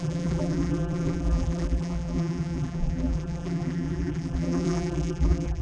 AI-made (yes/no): yes